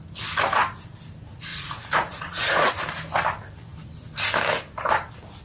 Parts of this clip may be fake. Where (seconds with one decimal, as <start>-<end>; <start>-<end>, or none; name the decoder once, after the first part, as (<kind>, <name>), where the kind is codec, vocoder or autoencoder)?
1.5-2.7 (vocoder, Vocos)